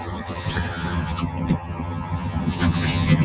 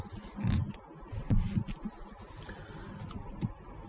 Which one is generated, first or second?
first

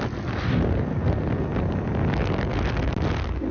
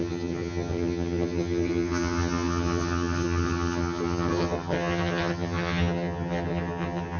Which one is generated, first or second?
second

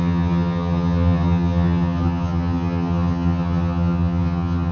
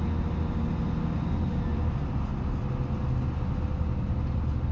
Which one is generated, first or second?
first